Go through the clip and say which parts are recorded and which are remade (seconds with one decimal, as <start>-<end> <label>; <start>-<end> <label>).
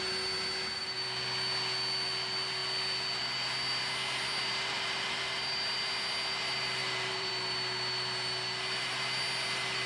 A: 0.0-6.8 recorded; 6.8-7.3 remade; 7.3-9.9 recorded